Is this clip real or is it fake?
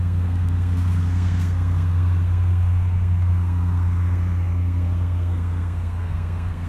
fake